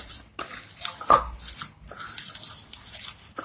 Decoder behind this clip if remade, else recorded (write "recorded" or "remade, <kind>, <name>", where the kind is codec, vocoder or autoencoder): recorded